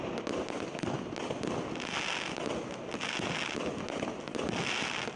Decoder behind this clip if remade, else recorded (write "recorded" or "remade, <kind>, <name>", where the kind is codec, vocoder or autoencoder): recorded